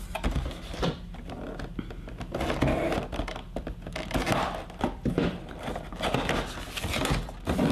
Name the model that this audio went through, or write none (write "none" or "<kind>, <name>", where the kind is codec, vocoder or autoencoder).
none